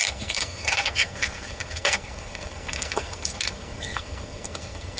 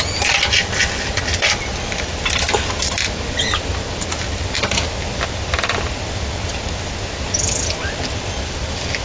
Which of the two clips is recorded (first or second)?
second